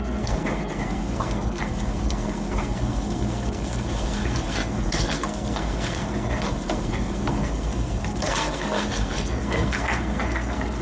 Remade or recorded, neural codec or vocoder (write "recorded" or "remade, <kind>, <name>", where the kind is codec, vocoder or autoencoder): remade, codec, SNAC